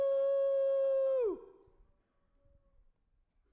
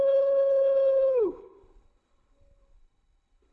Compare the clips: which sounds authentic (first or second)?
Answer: first